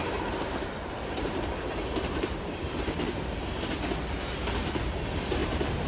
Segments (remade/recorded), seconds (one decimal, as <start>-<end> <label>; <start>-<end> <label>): 0.0-3.5 remade; 3.5-5.4 recorded; 5.4-5.9 remade